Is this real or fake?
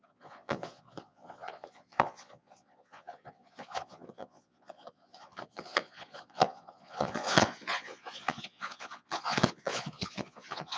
fake